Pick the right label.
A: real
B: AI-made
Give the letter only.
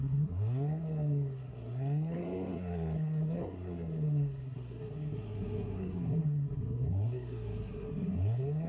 B